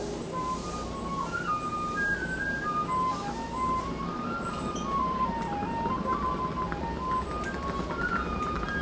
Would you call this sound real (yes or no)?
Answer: yes